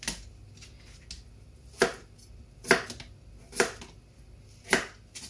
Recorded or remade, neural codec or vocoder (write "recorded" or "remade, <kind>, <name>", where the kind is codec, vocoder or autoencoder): recorded